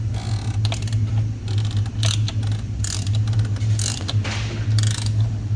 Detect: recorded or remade recorded